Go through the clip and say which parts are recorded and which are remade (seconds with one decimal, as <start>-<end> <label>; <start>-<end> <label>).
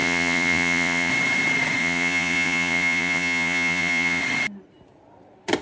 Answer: 0.0-1.1 remade; 1.1-1.8 recorded; 1.8-4.2 remade; 4.2-5.6 recorded